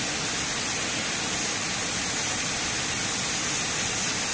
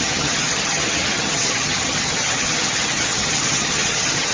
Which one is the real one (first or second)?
first